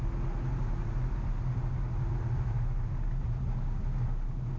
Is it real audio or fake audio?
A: real